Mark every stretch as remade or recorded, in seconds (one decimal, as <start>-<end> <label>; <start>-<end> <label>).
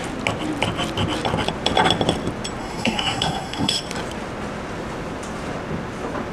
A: 0.0-2.6 recorded; 2.6-3.8 remade; 3.8-6.3 recorded